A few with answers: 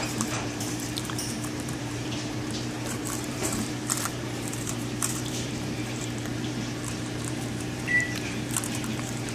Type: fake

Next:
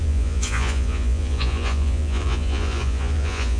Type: fake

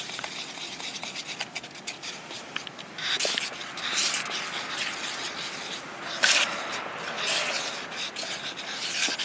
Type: real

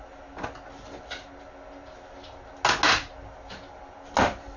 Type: real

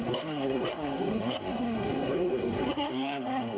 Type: fake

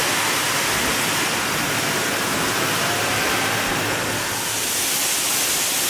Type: real